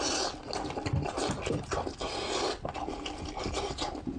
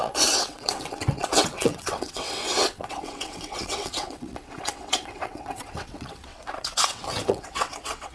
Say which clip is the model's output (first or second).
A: second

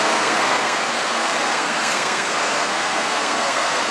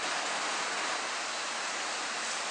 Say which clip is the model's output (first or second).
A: first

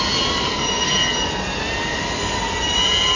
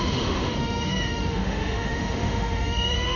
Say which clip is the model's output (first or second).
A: second